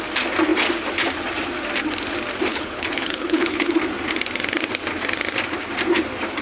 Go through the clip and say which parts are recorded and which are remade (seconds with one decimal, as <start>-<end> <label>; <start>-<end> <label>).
0.0-2.5 recorded; 2.5-3.8 remade; 3.8-6.4 recorded